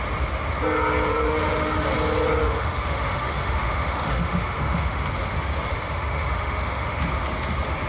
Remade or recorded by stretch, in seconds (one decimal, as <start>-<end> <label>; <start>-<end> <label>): 0.0-1.1 recorded; 1.1-1.9 remade; 1.9-2.4 recorded; 2.4-5.1 remade; 5.1-5.7 recorded; 5.7-7.0 remade; 7.0-7.9 recorded